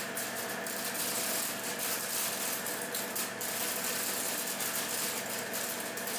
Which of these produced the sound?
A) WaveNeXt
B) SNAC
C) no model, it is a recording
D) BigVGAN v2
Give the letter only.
C